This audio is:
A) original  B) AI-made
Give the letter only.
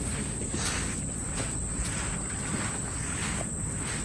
A